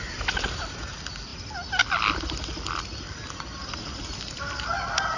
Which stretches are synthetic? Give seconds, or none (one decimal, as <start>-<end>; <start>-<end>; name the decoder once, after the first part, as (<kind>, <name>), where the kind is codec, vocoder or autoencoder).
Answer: none